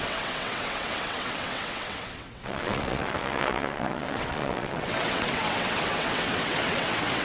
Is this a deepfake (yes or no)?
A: yes